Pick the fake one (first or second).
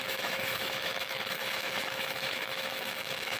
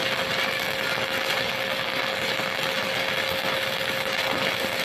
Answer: first